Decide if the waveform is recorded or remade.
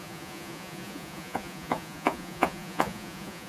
remade